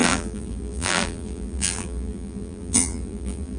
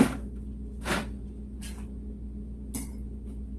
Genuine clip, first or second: second